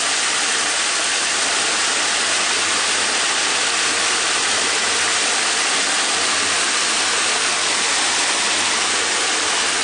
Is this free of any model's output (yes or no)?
yes